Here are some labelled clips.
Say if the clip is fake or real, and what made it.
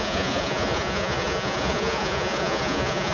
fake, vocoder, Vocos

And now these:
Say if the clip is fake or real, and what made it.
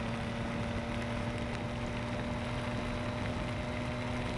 real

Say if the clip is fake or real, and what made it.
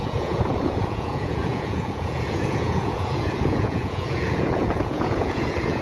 fake, vocoder, Vocos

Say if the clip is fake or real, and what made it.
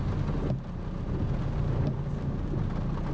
real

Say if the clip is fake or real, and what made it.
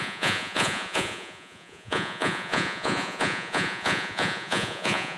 fake, vocoder, Vocos